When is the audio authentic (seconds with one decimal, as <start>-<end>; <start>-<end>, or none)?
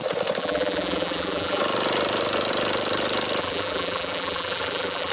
0.0-0.4; 1.6-3.4